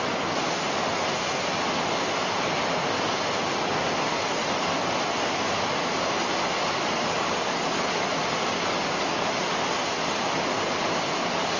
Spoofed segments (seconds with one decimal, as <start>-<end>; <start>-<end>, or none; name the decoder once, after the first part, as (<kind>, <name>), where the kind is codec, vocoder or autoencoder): none

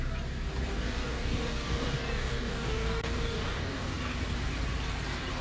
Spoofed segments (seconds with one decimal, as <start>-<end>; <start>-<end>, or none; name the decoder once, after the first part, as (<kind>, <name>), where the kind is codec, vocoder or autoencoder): 0.7-3.9 (codec, DAC)